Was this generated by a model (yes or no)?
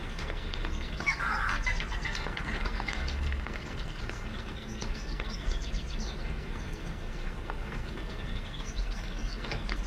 yes